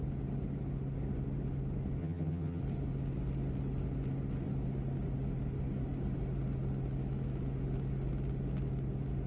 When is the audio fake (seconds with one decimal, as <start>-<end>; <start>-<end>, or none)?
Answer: 2.0-2.6